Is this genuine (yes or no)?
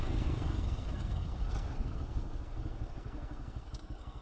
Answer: no